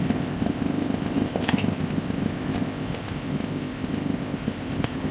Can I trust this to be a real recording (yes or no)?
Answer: no